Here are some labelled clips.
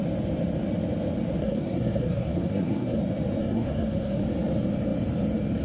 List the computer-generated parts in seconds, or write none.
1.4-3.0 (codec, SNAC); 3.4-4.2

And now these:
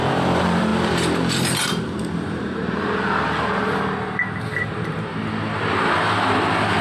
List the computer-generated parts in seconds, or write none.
0.0-6.8 (vocoder, BigVGAN v2)

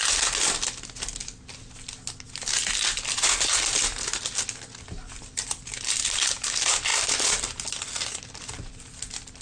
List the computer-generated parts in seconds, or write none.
6.9-9.4 (vocoder, BigVGAN v2)

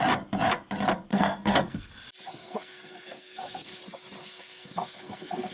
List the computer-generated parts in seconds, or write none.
1.1-1.9 (codec, SNAC); 2.4-3.8; 4.2-5.5

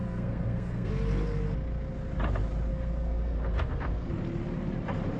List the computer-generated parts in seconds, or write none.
0.0-0.9 (codec, SNAC); 2.7-4.1

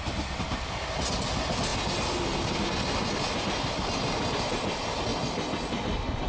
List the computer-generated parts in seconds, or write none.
none